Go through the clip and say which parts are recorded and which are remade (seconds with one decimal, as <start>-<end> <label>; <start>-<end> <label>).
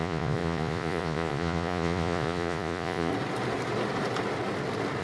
0.0-3.1 remade; 3.1-5.0 recorded